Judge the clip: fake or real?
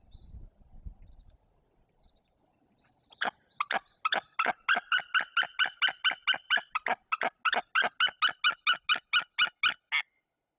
real